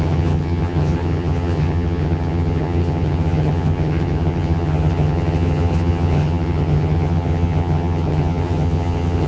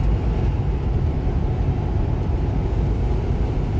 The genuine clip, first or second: second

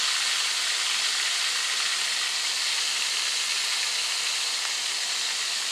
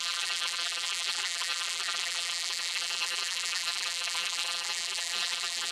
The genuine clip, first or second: first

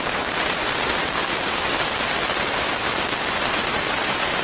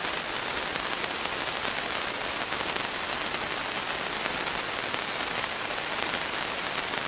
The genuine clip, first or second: second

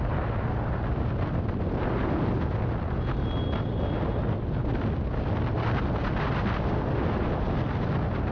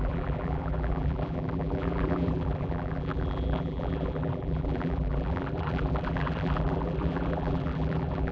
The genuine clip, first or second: first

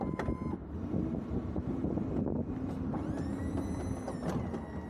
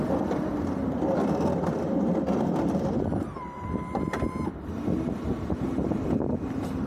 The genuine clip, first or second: first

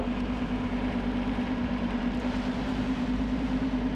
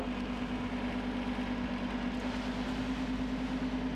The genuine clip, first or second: second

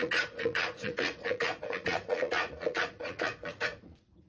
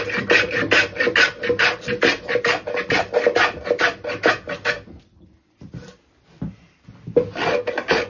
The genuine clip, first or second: second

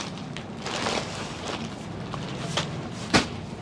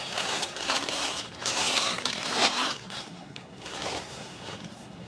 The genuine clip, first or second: first